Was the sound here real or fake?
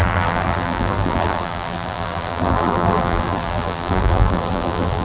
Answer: fake